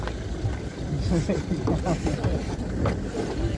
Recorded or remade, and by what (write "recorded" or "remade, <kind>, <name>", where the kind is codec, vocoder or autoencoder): recorded